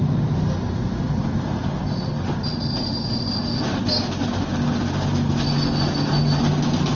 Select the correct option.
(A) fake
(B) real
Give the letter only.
B